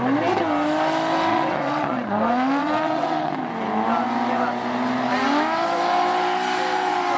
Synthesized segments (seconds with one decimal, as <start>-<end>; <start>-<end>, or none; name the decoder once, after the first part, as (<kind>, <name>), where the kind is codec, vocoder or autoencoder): 1.3-2.1 (vocoder, WaveNeXt); 2.6-3.3